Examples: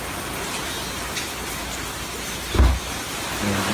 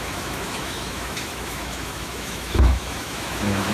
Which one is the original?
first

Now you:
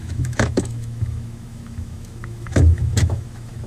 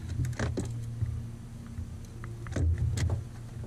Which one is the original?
second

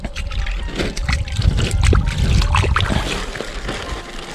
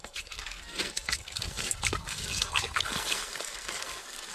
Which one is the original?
first